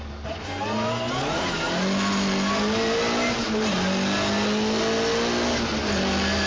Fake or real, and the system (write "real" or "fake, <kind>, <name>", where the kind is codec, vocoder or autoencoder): real